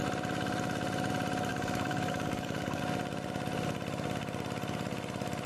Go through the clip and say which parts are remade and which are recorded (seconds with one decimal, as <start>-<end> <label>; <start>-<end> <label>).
0.0-1.5 recorded; 1.5-2.8 remade; 2.8-5.5 recorded